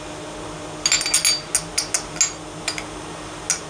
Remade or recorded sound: recorded